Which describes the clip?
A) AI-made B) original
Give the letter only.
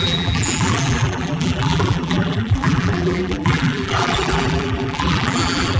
A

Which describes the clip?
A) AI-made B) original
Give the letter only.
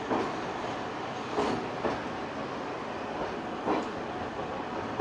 B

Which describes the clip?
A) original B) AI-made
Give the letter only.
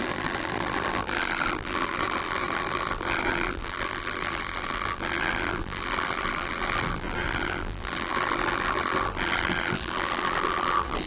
B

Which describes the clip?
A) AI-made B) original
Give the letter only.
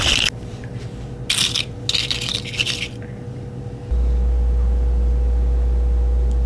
B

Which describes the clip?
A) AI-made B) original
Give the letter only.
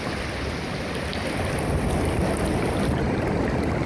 B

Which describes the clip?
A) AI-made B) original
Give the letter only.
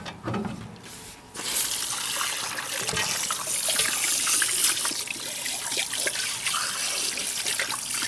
B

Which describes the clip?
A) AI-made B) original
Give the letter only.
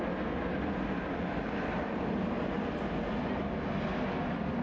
B